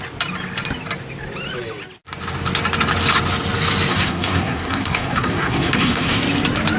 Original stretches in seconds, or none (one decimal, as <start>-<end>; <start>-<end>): 0.0-3.9; 6.2-6.8